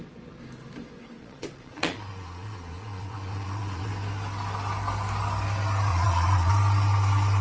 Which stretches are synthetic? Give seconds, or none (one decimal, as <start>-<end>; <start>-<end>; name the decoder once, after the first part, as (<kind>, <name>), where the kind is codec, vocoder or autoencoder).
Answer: 1.2-3.9 (vocoder, Vocos); 5.9-6.5